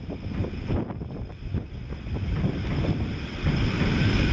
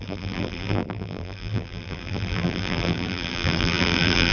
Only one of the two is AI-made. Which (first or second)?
second